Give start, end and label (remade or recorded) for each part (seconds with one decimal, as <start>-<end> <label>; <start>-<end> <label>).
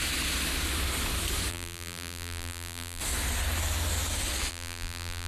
0.0-1.5 recorded; 1.5-3.0 remade; 3.0-4.5 recorded; 4.5-5.3 remade